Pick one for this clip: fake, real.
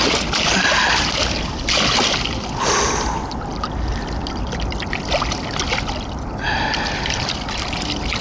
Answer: real